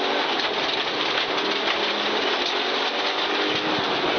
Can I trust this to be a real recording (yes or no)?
yes